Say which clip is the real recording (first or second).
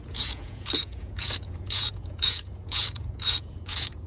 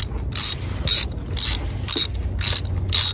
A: second